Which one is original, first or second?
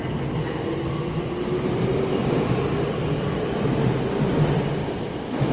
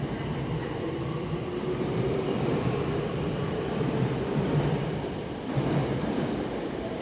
first